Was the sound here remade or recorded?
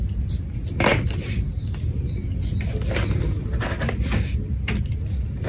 recorded